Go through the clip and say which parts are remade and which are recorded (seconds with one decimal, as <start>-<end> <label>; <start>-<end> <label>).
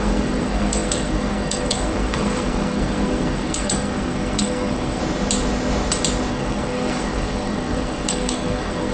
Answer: 0.0-5.0 remade; 5.0-6.3 recorded; 6.3-8.9 remade